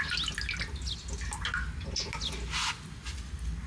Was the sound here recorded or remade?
recorded